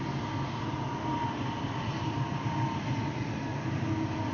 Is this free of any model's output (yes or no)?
yes